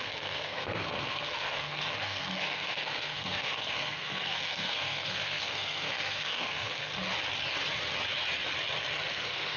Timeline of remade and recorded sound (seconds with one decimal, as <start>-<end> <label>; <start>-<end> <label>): 0.0-6.9 remade; 6.9-9.1 recorded; 9.1-9.6 remade